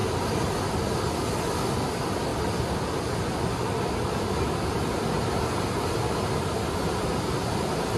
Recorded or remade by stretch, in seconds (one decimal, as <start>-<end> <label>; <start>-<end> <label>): 0.0-8.0 recorded